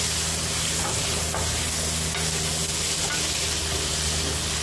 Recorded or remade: recorded